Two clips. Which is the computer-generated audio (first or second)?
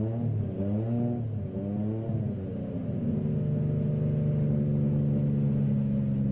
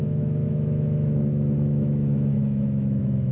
second